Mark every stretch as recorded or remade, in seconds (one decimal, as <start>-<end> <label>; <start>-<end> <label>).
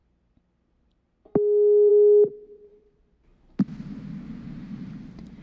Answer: 0.0-3.3 recorded; 3.3-3.8 remade; 3.8-5.4 recorded